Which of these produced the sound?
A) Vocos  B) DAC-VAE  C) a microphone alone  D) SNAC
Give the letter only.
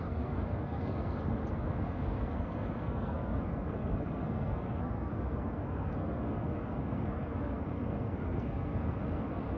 D